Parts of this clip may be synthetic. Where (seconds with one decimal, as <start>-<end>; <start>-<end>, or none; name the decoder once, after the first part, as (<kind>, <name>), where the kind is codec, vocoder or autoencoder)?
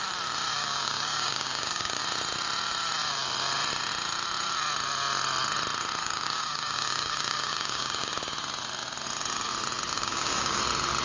0.6-2.0 (codec, DAC); 6.0-8.2; 9.9-10.6